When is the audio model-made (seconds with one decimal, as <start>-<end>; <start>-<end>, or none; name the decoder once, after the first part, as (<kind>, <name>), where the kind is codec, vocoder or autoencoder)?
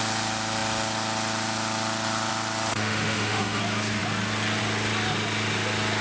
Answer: 2.7-3.6 (autoencoder, DAC-VAE)